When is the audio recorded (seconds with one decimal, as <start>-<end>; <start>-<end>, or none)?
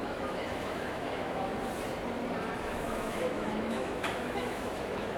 1.5-2.6